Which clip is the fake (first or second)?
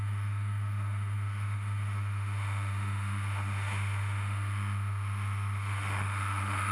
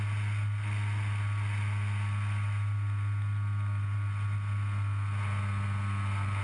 first